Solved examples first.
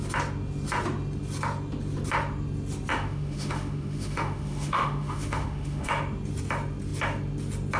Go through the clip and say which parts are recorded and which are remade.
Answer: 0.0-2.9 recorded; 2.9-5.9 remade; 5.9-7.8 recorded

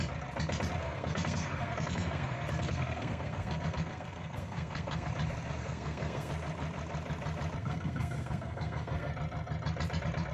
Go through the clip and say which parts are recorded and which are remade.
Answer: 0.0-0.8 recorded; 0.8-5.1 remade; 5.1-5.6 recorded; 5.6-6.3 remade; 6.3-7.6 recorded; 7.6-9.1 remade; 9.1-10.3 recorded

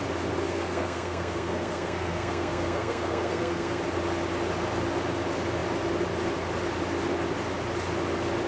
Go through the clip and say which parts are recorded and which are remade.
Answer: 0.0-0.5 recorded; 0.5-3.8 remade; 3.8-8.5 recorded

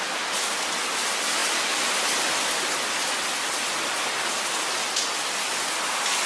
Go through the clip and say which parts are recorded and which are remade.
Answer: 0.0-6.3 recorded

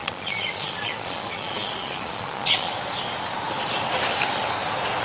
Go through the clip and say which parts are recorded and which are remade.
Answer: 0.0-2.7 remade; 2.7-5.0 recorded

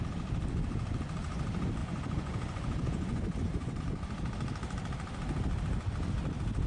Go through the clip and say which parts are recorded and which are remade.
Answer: 0.0-1.8 recorded; 1.8-3.8 remade; 3.8-6.7 recorded

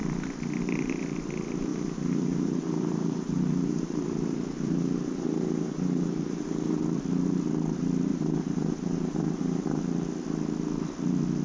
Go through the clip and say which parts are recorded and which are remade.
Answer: 0.0-1.7 recorded; 1.7-6.8 remade; 6.8-8.1 recorded; 8.1-9.8 remade; 9.8-11.4 recorded